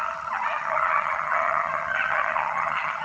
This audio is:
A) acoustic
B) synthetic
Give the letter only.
B